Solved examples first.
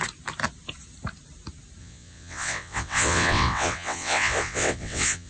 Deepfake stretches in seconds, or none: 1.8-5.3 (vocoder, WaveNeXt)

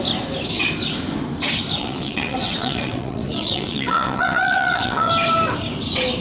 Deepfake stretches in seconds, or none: 1.8-5.1 (vocoder, WaveNeXt)

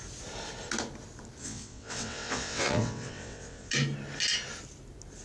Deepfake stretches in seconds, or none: 1.4-3.7 (vocoder, WaveNeXt)

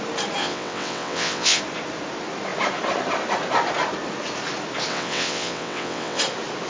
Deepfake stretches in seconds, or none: 0.4-1.6 (vocoder, WaveNeXt); 4.9-6.2